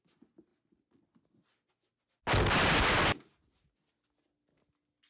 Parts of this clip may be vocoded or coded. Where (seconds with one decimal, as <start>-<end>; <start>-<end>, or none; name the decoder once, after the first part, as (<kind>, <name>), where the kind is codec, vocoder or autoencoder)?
none